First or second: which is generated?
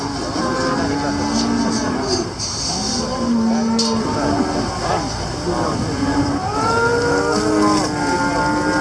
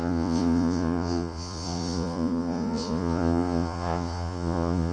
second